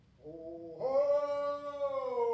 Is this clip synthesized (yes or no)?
no